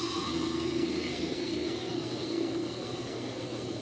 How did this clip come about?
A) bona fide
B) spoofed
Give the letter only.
B